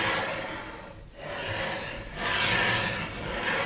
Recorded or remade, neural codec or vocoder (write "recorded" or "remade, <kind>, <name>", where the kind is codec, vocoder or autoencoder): recorded